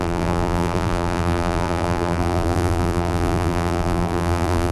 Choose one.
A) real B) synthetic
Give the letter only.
B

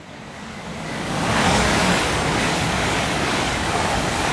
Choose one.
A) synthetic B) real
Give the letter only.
A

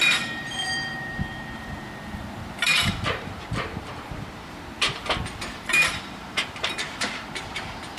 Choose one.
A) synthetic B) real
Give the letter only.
A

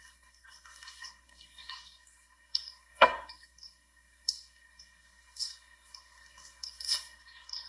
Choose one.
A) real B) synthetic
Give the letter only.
B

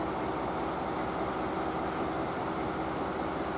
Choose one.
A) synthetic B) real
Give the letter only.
A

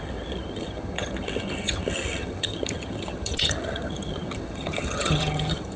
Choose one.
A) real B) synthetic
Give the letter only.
B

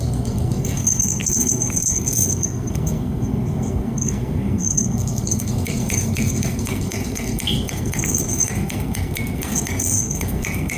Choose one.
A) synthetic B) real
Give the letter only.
A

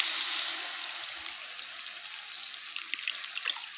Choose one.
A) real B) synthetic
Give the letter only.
A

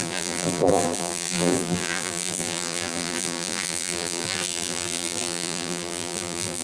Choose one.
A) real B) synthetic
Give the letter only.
B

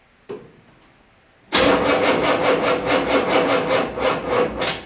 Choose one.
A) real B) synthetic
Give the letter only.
A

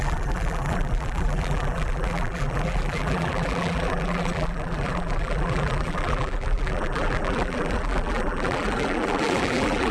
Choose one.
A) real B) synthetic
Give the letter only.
B